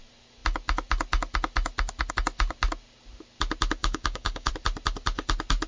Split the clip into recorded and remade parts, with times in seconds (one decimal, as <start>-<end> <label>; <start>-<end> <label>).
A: 0.0-3.8 recorded; 3.8-4.5 remade; 4.5-5.7 recorded